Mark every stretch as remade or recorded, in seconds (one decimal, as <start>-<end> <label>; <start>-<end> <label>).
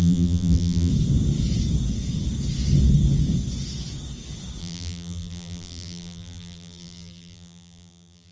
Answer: 0.0-0.9 remade; 0.9-4.6 recorded; 4.6-8.3 remade